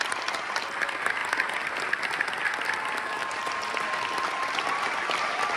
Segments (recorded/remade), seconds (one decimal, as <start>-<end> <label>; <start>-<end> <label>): 0.0-5.6 recorded